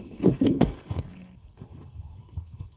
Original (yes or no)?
no